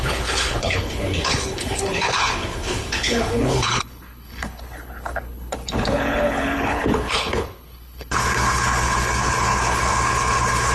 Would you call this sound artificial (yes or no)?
yes